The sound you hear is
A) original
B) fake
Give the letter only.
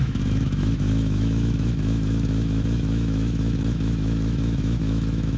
B